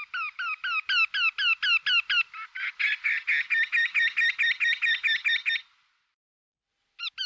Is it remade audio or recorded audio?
recorded